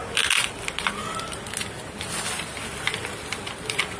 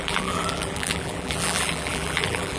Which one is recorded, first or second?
first